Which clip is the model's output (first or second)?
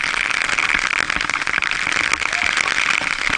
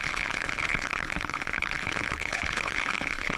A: second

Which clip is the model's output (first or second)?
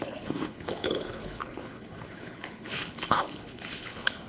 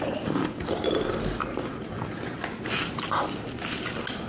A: first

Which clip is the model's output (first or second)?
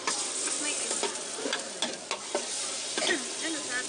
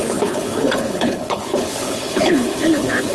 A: second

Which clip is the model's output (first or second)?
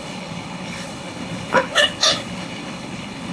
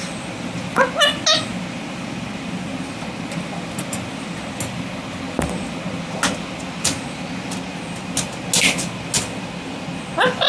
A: first